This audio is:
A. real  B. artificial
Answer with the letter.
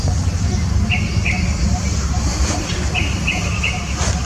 A